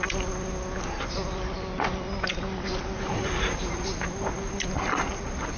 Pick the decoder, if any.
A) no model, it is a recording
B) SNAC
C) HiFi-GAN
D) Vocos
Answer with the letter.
A